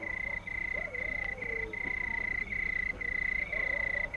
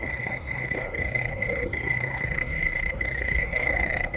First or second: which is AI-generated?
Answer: second